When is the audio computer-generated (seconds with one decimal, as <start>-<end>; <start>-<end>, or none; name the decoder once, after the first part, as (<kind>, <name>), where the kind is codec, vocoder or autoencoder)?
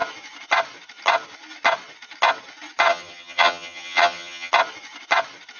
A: 2.9-4.5 (vocoder, HiFi-GAN)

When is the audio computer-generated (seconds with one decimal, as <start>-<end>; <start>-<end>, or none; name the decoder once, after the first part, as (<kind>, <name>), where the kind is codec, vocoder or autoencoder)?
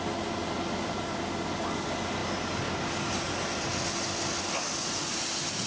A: none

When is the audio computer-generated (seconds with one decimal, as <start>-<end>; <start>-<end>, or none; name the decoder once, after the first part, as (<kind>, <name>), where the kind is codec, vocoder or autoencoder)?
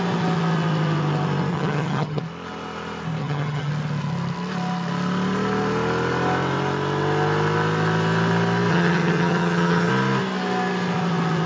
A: 1.5-2.2 (vocoder, HiFi-GAN); 3.2-3.7; 8.7-9.9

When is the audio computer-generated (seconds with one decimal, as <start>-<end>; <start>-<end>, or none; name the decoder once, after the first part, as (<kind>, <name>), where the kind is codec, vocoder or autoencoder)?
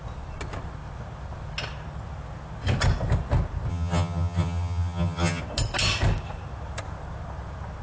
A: 3.7-5.4 (vocoder, HiFi-GAN)